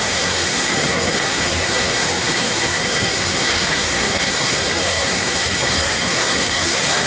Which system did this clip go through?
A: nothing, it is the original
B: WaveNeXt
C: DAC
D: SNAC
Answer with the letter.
D